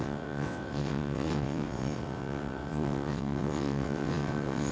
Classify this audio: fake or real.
fake